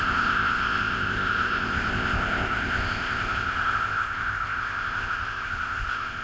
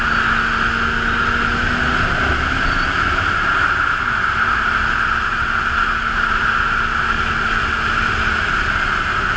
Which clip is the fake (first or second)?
first